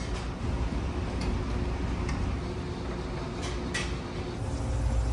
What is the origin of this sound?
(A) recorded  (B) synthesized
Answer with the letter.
A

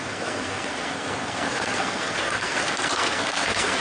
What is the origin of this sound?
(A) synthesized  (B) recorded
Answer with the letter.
A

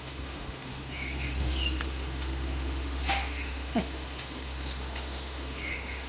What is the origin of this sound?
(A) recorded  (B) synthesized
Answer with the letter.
B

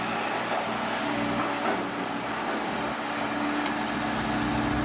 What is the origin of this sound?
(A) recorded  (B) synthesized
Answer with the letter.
A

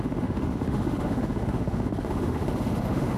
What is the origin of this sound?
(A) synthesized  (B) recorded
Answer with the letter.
A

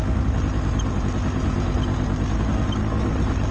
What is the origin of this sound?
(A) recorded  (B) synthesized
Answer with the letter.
A